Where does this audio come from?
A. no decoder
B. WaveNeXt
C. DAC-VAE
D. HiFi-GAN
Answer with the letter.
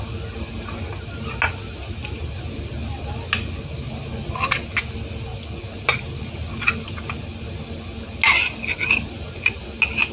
A